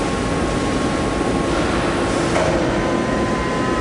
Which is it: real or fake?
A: real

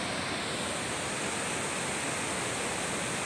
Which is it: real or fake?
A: real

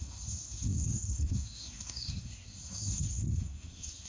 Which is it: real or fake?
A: fake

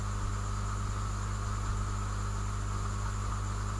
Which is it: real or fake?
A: real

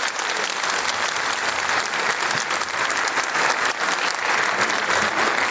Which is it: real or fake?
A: real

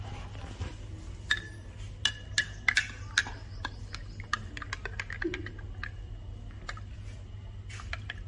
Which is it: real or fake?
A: real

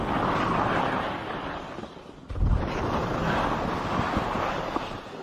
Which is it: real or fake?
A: real